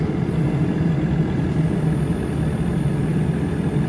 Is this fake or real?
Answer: real